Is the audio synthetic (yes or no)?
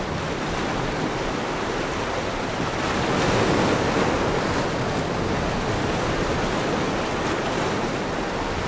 no